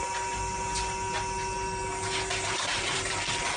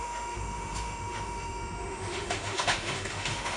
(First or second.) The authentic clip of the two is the first